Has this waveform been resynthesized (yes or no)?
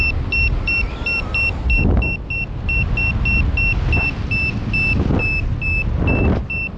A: no